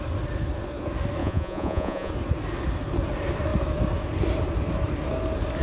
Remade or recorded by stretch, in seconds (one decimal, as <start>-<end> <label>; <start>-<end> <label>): 0.0-1.2 recorded; 1.2-2.1 remade; 2.1-5.6 recorded